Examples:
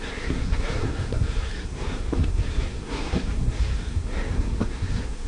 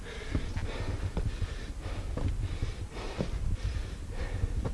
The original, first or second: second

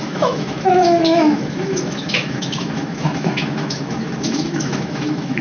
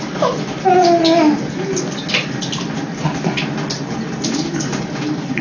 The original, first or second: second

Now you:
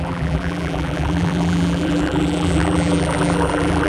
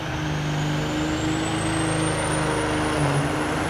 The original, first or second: second